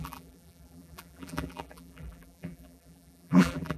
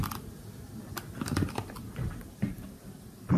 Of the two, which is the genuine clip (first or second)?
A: second